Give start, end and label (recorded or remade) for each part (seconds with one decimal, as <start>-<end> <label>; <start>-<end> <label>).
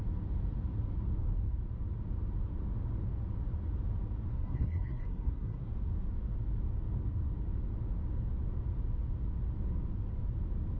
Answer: 0.0-4.3 recorded; 4.3-5.7 remade; 5.7-10.8 recorded